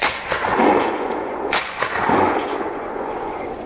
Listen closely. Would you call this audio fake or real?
fake